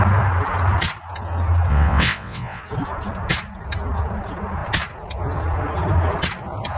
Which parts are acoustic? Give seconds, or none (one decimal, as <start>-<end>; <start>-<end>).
0.0-1.7; 2.6-6.8